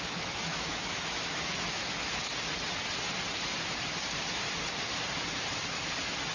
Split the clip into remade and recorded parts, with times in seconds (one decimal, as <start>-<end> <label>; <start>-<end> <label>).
0.0-2.3 remade; 2.3-6.3 recorded